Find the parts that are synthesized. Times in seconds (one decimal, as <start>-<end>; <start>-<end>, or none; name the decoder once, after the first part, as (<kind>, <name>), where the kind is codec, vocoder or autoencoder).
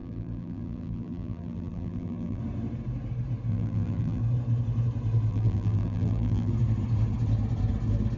0.0-2.4 (vocoder, BigVGAN v2); 3.5-4.2; 5.3-6.5